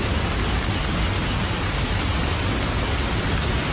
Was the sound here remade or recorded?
recorded